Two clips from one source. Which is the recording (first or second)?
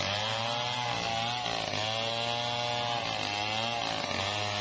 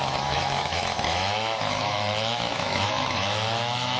first